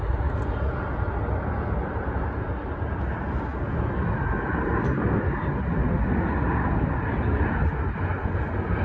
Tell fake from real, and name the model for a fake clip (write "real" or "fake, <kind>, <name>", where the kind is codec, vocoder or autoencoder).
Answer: real